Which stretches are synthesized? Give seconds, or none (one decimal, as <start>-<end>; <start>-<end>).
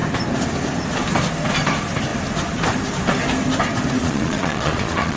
4.0-5.2